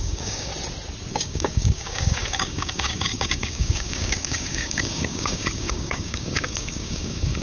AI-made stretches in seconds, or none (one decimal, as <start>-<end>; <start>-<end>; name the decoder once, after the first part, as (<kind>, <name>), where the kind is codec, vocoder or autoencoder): 0.0-0.5 (codec, DAC); 1.1-7.4